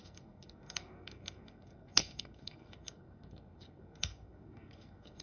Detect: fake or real fake